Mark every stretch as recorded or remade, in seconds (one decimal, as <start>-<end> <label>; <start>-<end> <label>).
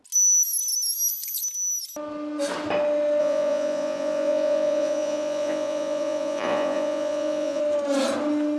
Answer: 0.0-3.2 recorded; 3.2-7.6 remade; 7.6-8.6 recorded